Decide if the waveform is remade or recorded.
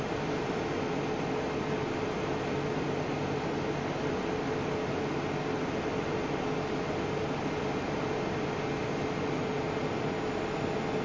recorded